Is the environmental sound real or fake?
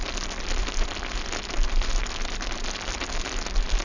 real